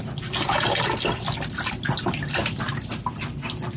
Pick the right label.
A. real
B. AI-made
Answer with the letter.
A